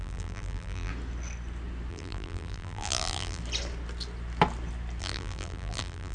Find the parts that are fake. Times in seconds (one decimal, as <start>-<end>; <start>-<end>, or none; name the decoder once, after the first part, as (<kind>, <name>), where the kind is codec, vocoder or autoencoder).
0.0-0.9 (vocoder, BigVGAN v2); 1.9-3.4; 5.0-6.1